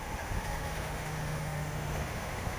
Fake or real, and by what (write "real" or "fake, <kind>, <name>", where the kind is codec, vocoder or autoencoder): fake, autoencoder, DAC-VAE